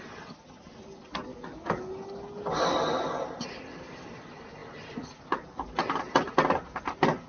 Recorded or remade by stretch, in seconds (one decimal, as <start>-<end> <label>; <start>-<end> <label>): 0.0-1.3 recorded; 1.3-1.9 remade; 1.9-7.3 recorded